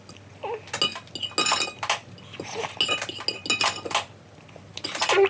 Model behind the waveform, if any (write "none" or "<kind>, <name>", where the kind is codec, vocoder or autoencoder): none